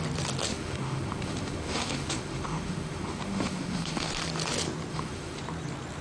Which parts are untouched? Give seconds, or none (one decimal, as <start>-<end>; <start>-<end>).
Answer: 0.0-0.5; 4.1-4.9; 5.4-6.0

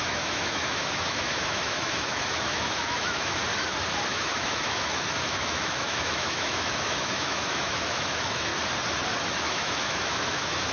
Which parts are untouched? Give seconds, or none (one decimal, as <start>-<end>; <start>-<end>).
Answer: 3.4-4.1; 8.5-9.4

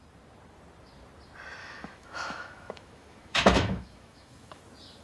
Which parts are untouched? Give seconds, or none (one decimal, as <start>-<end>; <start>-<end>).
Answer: 0.0-1.6; 4.6-5.0

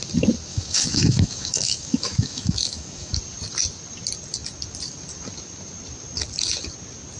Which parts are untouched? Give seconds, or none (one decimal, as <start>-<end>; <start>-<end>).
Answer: 0.0-0.5; 3.1-7.2

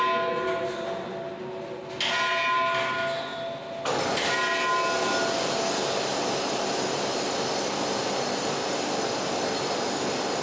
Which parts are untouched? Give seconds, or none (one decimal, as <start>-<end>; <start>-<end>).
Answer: 0.0-10.4